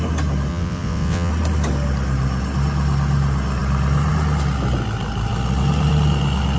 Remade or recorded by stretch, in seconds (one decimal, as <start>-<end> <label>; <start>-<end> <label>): 0.0-0.5 recorded; 0.5-1.3 remade; 1.3-6.6 recorded